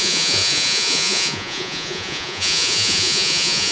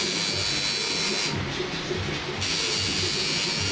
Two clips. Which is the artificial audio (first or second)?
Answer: first